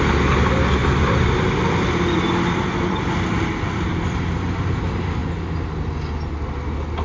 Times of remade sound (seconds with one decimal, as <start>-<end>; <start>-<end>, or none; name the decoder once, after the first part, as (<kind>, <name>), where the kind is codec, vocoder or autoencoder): 0.8-4.8 (vocoder, BigVGAN v2)